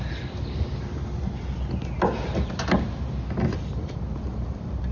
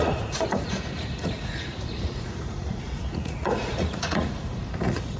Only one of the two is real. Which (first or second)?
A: first